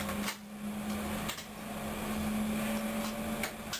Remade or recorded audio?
recorded